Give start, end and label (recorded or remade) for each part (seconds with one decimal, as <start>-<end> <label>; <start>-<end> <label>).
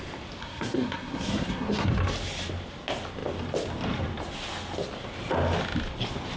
0.0-0.4 recorded; 0.4-1.9 remade; 1.9-6.4 recorded